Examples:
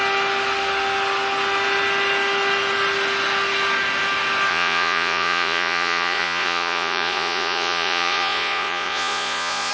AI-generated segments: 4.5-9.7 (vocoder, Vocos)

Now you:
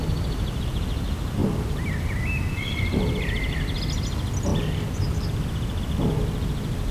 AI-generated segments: 1.4-3.6 (vocoder, BigVGAN v2); 4.5-5.8

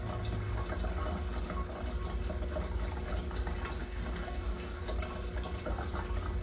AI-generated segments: 3.8-4.8 (codec, DAC)

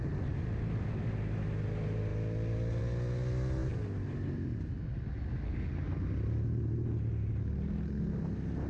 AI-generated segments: none

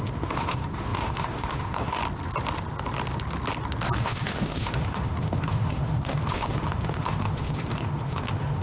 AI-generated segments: 0.0-2.0 (autoencoder, DAC-VAE); 4.0-8.6

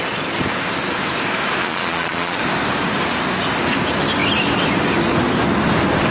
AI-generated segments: 1.6-2.4 (vocoder, Vocos)